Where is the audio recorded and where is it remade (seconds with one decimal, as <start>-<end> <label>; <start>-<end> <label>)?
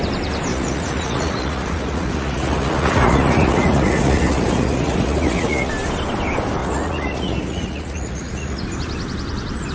0.0-0.5 recorded; 0.5-5.7 remade; 5.7-6.6 recorded; 6.6-8.6 remade; 8.6-9.7 recorded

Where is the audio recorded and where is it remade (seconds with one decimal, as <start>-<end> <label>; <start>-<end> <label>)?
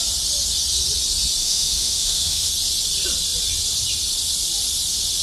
0.0-1.4 recorded; 1.4-2.5 remade; 2.5-5.2 recorded